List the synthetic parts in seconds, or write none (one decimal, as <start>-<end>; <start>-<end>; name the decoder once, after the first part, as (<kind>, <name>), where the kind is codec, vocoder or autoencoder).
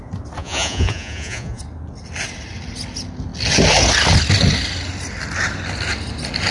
0.4-1.6 (vocoder, Vocos)